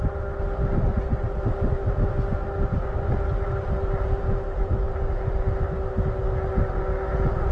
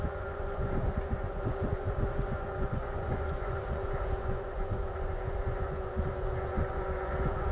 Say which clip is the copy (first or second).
second